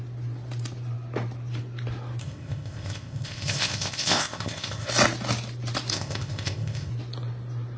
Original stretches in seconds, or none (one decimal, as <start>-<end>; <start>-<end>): 0.0-2.2; 4.9-5.9; 6.9-7.8